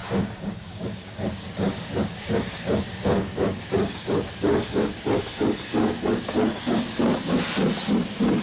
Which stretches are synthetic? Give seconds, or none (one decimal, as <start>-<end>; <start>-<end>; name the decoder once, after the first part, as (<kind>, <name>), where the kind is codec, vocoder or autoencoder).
0.0-5.0 (codec, DAC); 5.7-7.0